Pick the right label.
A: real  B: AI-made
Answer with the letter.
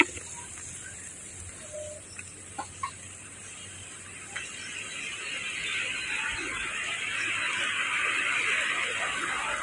A